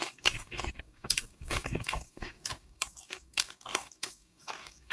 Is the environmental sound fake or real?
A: fake